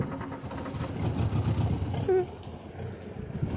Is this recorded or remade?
recorded